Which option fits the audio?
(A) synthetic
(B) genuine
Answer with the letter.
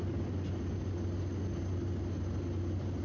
B